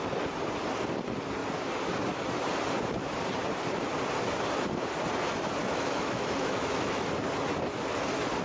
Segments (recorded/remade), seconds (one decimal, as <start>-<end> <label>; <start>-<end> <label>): 0.0-5.6 recorded; 5.6-7.1 remade; 7.1-8.4 recorded